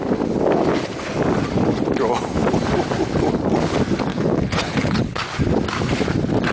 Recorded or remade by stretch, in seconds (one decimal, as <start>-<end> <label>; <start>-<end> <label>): 0.0-4.1 recorded; 4.1-5.2 remade; 5.2-6.5 recorded